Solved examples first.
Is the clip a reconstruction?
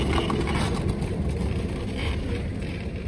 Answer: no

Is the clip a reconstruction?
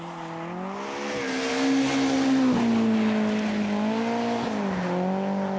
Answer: no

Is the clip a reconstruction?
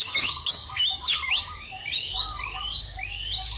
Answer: yes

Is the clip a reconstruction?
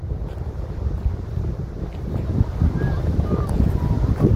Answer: no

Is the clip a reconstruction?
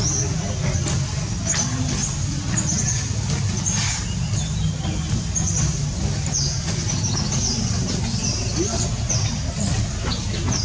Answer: no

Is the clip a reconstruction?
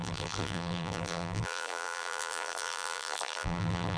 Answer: yes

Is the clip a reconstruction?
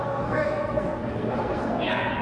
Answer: yes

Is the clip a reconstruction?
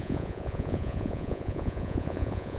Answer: yes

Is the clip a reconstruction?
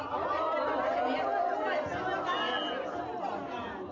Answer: no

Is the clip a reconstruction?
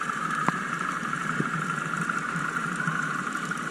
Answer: yes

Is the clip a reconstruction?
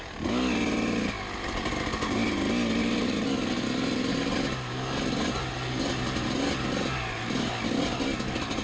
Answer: no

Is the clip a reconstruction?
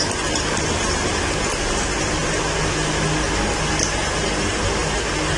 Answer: no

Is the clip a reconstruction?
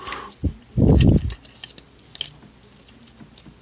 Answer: no